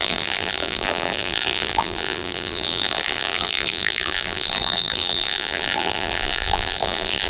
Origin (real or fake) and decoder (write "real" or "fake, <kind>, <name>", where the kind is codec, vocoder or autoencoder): fake, vocoder, BigVGAN v2